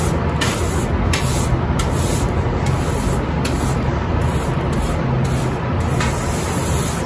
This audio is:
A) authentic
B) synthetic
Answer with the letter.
A